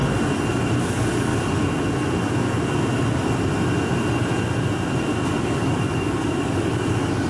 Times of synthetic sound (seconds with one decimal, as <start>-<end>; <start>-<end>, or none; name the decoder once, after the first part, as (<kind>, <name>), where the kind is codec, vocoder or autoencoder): 0.8-1.3 (codec, DAC); 5.4-7.3

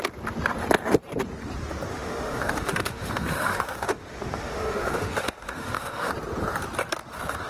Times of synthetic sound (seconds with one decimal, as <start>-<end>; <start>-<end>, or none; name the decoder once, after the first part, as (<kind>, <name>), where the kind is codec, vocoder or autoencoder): 1.9-6.1 (autoencoder, DAC-VAE)